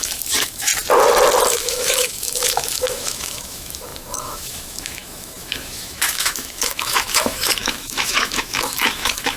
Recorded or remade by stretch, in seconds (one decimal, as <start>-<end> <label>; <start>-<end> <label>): 0.0-0.7 remade; 0.7-1.5 recorded; 1.5-9.4 remade